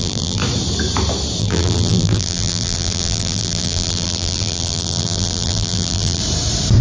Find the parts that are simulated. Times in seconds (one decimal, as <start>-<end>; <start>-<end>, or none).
0.0-0.4; 1.4-6.2